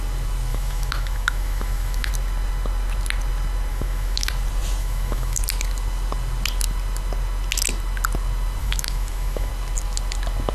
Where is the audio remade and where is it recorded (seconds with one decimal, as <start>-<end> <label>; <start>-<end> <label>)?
0.0-0.5 recorded; 0.5-2.1 remade; 2.1-3.7 recorded; 3.7-4.3 remade; 4.3-4.8 recorded; 4.8-5.4 remade; 5.4-8.6 recorded; 8.6-9.5 remade; 9.5-10.5 recorded